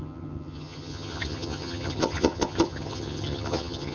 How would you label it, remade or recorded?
remade